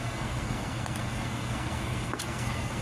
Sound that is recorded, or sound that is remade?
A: remade